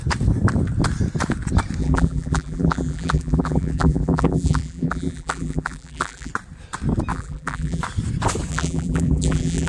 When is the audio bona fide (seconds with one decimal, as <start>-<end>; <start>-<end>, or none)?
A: 0.0-1.8; 6.3-7.1; 7.8-8.5